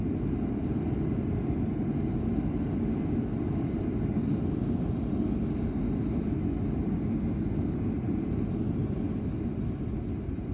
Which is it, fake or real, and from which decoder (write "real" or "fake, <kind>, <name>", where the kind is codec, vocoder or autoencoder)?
real